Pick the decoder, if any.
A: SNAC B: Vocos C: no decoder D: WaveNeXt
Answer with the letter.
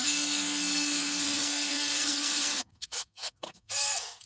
A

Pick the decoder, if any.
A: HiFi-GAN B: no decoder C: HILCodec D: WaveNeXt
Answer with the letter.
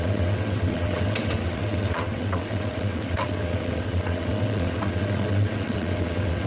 D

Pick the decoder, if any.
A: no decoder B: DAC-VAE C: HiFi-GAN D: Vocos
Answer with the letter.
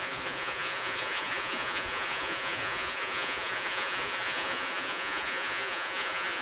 D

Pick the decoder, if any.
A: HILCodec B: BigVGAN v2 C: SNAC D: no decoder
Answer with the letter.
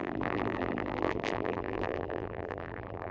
B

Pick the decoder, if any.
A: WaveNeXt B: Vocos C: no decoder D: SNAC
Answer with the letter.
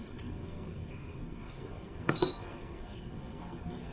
D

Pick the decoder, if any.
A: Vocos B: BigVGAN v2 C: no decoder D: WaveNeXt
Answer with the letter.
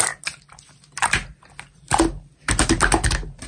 C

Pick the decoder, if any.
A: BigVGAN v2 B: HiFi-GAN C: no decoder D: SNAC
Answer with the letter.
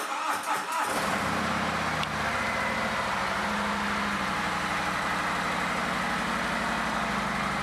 C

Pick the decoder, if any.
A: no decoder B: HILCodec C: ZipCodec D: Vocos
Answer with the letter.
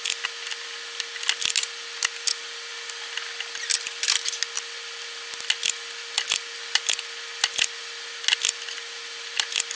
A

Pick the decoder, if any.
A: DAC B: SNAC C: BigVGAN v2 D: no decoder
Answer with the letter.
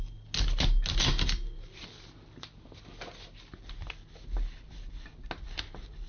D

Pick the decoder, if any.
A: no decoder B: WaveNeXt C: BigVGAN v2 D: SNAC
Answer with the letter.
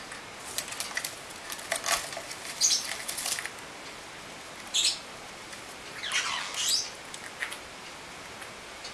A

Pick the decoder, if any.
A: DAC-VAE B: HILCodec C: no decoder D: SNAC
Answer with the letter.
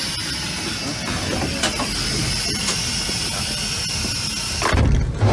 C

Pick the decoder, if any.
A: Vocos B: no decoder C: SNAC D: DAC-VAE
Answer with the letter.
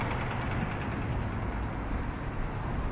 B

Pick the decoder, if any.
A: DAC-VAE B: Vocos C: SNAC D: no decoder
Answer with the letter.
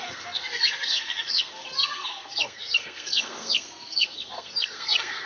C